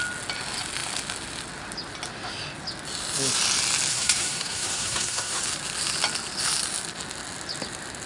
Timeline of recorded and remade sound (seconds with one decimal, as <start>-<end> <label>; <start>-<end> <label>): 0.0-3.9 recorded; 3.9-5.4 remade; 5.4-8.1 recorded